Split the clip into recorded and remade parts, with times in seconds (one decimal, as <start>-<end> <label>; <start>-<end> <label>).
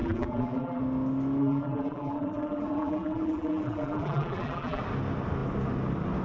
0.0-0.8 remade; 0.8-1.4 recorded; 1.4-4.8 remade; 4.8-6.2 recorded